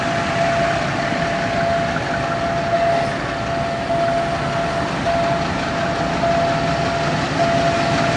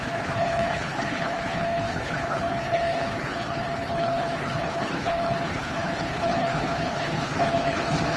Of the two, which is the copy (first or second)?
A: second